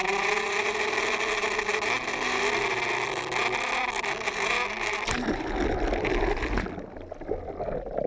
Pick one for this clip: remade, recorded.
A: recorded